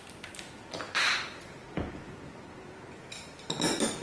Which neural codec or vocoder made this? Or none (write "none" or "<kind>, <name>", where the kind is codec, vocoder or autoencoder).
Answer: none